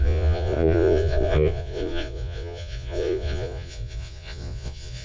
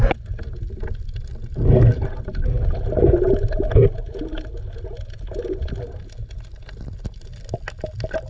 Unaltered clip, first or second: second